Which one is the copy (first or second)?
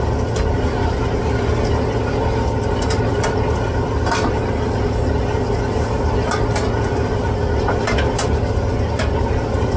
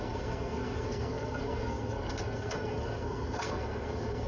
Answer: second